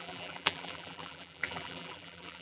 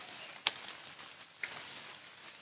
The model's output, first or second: first